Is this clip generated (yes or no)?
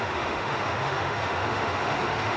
yes